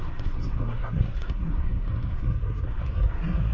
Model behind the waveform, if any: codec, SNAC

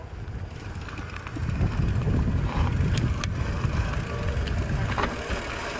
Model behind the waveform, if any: none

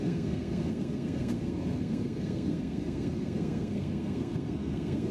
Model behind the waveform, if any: codec, SNAC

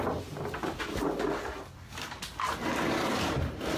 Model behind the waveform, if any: none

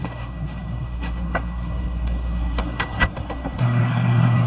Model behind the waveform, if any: codec, SNAC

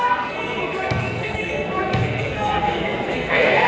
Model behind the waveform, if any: codec, SNAC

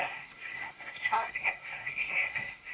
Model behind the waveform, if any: codec, SNAC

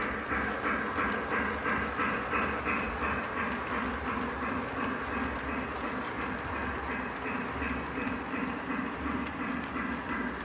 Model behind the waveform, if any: none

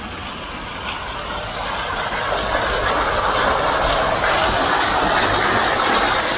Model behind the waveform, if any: none